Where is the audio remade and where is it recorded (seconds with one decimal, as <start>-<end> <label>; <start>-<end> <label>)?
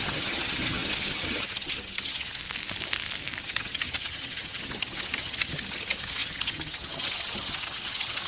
0.0-2.4 remade; 2.4-3.4 recorded; 3.4-8.3 remade